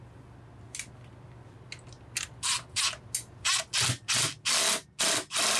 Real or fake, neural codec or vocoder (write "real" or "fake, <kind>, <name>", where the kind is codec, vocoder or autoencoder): real